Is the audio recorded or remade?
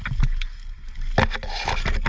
recorded